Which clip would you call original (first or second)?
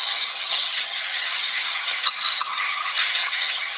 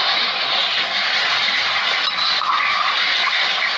second